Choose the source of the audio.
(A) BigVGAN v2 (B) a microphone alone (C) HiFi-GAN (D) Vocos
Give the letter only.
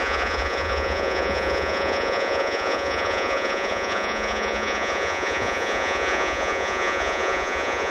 D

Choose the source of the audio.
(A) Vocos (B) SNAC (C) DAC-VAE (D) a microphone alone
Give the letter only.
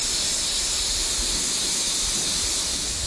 D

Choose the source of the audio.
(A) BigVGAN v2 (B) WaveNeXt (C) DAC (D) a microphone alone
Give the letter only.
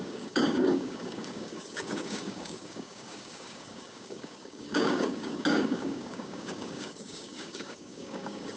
C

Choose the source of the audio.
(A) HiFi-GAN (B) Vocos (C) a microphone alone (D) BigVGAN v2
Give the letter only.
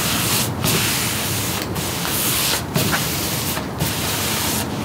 C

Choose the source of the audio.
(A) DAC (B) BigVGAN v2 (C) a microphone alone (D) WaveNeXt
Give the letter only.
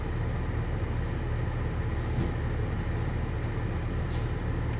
C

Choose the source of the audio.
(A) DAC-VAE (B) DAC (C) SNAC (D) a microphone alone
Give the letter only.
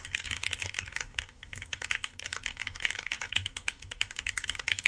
B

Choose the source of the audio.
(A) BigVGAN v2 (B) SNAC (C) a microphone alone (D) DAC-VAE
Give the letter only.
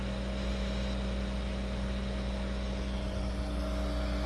C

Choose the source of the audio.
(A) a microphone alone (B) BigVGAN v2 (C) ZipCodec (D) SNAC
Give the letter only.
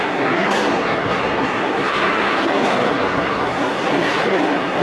D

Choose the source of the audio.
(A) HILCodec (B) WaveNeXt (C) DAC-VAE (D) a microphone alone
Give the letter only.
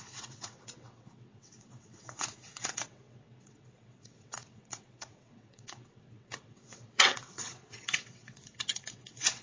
B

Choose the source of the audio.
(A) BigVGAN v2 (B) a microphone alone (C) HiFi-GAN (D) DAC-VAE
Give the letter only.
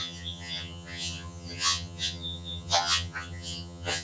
C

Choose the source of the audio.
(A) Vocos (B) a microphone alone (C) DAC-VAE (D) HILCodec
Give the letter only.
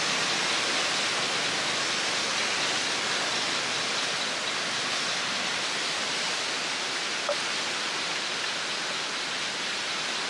B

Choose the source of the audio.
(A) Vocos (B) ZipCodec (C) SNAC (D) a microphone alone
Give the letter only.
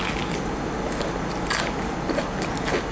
D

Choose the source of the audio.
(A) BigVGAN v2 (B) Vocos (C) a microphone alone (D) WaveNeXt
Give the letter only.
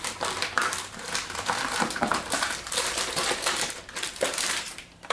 A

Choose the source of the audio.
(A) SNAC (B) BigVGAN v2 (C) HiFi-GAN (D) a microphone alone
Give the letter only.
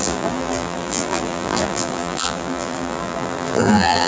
B